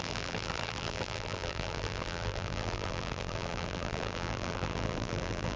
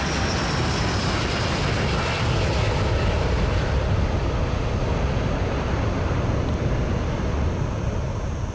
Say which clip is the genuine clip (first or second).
second